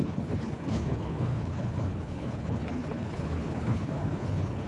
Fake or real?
fake